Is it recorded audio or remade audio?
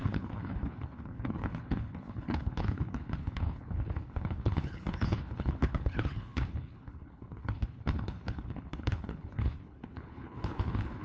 remade